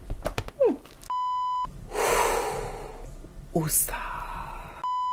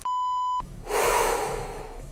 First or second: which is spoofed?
second